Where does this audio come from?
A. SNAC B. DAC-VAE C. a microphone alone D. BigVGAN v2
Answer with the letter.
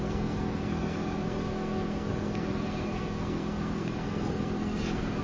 A